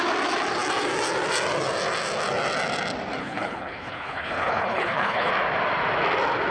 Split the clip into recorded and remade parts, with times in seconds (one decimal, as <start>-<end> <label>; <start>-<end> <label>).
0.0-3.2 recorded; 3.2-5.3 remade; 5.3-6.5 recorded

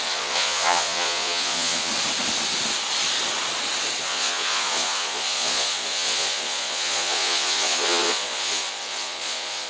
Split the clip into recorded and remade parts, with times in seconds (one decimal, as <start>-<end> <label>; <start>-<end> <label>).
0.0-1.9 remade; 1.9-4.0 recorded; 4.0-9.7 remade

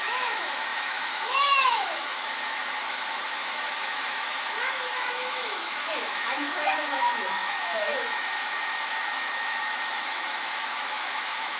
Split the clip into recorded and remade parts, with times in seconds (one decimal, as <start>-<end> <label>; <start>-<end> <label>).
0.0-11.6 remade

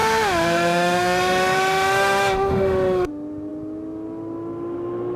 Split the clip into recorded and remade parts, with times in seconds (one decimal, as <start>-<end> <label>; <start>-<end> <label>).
0.0-3.1 remade; 3.1-5.2 recorded

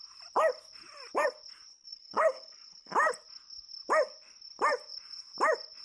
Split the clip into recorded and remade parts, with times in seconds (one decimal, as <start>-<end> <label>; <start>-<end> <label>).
0.0-1.7 recorded; 1.7-2.9 remade; 2.9-5.8 recorded